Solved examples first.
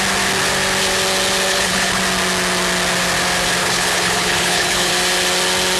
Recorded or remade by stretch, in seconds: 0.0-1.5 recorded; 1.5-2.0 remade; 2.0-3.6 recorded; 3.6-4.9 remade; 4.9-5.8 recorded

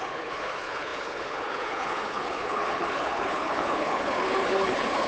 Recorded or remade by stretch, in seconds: 0.0-5.1 remade

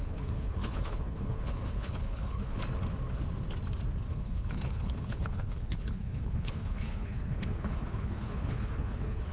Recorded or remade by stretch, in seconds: 0.0-2.6 remade; 2.6-4.1 recorded; 4.1-9.3 remade

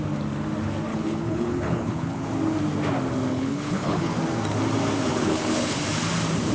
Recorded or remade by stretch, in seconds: 0.0-0.9 recorded; 0.9-2.3 remade; 2.3-3.3 recorded; 3.3-4.1 remade; 4.1-5.1 recorded; 5.1-5.8 remade; 5.8-6.5 recorded